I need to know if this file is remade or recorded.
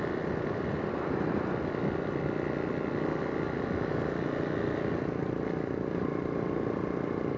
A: recorded